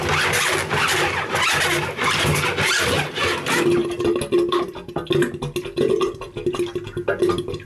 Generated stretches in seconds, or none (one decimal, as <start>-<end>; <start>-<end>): none